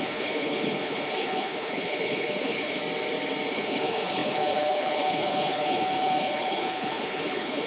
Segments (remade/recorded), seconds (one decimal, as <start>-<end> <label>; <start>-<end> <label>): 0.0-2.8 remade; 2.8-3.5 recorded; 3.5-7.7 remade